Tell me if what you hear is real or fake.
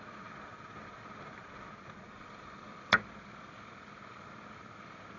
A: real